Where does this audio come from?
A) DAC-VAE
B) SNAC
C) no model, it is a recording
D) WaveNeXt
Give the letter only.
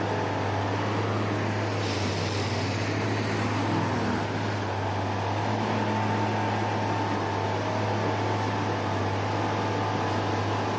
C